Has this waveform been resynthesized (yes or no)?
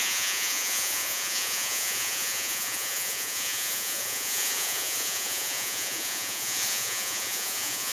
yes